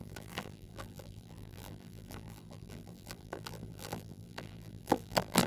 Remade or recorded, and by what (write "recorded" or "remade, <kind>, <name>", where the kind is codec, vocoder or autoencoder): remade, vocoder, BigVGAN v2